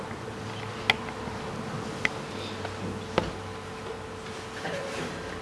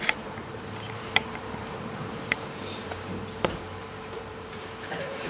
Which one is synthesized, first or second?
second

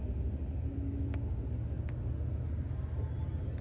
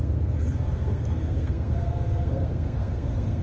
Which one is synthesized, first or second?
second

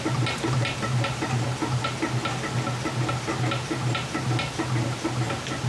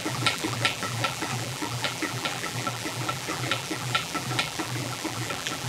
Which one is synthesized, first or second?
second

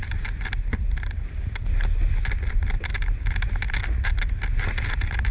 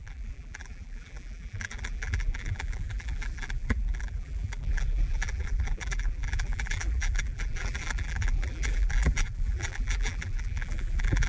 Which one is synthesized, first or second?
second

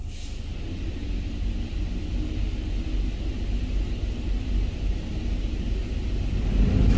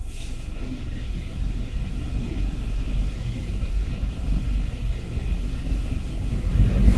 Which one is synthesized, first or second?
second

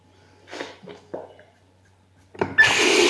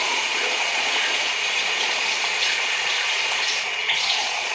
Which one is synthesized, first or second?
second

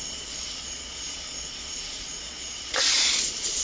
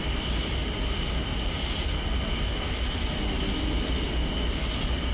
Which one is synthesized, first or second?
first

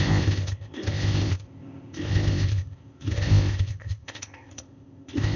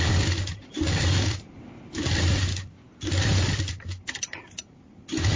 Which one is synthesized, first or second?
first